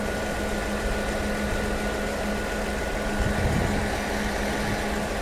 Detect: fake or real real